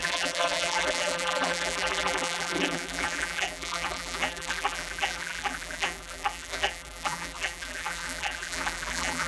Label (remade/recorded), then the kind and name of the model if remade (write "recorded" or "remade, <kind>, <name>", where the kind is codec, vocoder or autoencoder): remade, vocoder, BigVGAN v2